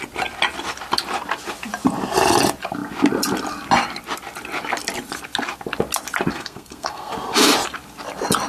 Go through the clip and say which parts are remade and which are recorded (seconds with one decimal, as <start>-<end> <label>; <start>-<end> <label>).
0.0-6.3 recorded; 6.3-7.1 remade; 7.1-8.5 recorded